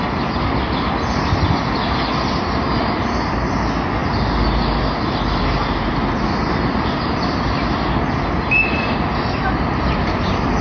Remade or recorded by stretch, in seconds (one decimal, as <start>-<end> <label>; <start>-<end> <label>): 0.0-10.6 recorded